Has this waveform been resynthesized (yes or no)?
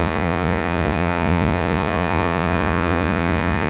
yes